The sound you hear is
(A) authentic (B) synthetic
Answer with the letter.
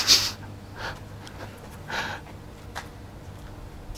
A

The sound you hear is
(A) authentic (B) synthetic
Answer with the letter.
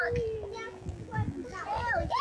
B